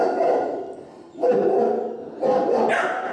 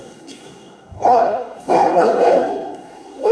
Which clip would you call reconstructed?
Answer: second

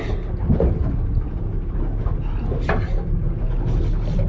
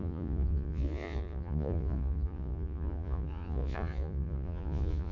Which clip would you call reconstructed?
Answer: second